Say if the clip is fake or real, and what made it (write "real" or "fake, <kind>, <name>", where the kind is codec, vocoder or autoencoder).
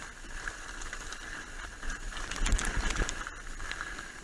real